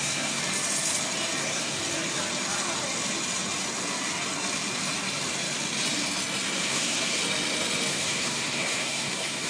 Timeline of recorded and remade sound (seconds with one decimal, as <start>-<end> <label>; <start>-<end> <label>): 0.0-0.4 remade; 0.4-1.4 recorded; 1.4-1.8 remade; 1.8-6.6 recorded; 6.6-7.2 remade; 7.2-7.9 recorded; 7.9-9.5 remade

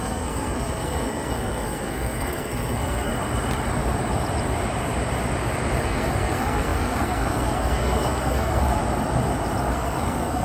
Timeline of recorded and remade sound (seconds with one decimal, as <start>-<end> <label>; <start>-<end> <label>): 0.0-3.1 remade; 3.1-5.8 recorded; 5.8-8.8 remade; 8.8-9.6 recorded; 9.6-10.4 remade

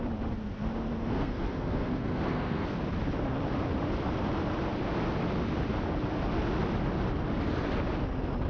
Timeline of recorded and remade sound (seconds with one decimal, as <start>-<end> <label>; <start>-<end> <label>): 0.0-1.0 recorded; 1.0-2.8 remade; 2.8-8.5 recorded

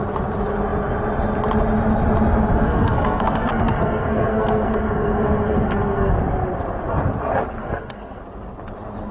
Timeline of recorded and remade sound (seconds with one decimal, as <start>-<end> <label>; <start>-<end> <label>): 0.0-2.6 recorded; 2.6-6.2 remade; 6.2-7.6 recorded; 7.6-8.2 remade; 8.2-9.1 recorded

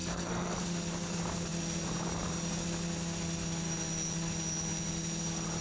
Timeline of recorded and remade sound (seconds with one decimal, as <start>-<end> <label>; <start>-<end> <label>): 0.0-0.6 remade; 0.6-5.6 recorded

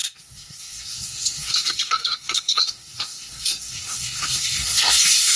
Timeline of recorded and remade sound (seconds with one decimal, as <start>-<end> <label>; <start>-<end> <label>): 0.0-5.4 remade

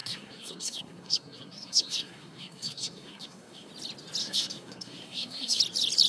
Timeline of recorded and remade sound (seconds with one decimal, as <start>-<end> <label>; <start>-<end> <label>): 0.0-3.7 remade; 3.7-4.2 recorded; 4.2-5.6 remade; 5.6-6.1 recorded